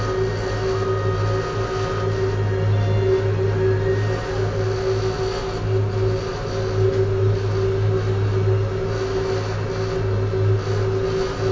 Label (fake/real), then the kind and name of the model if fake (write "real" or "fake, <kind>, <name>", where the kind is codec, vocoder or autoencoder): real